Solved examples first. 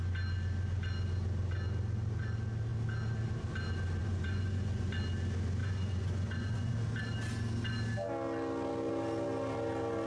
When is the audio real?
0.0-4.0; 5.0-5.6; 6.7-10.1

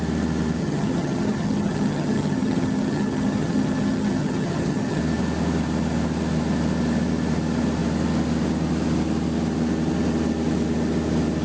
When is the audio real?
0.0-0.6; 5.0-11.4

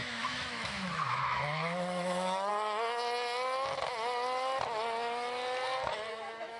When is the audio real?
2.5-6.1

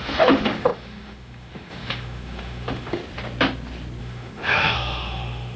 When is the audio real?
3.0-4.0

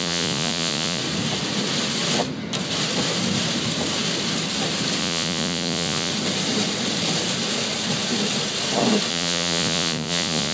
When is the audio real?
1.0-5.0; 6.1-9.1